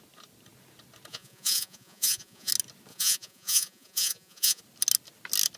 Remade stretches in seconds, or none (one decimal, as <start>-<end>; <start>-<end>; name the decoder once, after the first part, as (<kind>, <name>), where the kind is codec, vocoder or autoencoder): 1.1-2.5 (vocoder, Vocos); 2.9-4.6